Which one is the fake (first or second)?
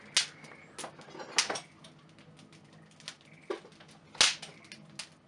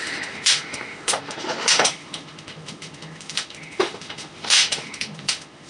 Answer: second